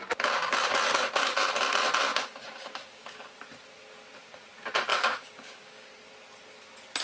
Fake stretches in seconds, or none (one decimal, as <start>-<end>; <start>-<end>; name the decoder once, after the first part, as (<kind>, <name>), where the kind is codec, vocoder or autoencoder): 2.1-3.3 (codec, DAC); 4.9-5.9